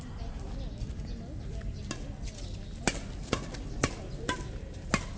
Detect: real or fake real